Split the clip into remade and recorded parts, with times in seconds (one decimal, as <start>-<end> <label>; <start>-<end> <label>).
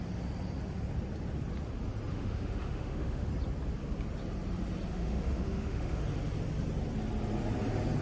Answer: 0.0-2.1 recorded; 2.1-3.3 remade; 3.3-4.9 recorded; 4.9-6.0 remade; 6.0-8.0 recorded